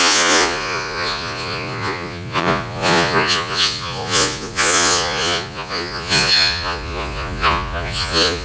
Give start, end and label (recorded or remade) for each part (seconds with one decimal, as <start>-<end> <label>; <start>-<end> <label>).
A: 0.0-8.4 remade